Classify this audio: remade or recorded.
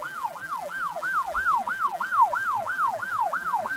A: remade